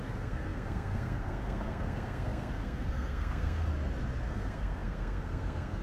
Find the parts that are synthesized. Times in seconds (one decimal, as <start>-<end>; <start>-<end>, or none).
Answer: 0.0-3.7; 4.3-5.8